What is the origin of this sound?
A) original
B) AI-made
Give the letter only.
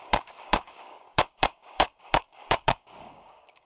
B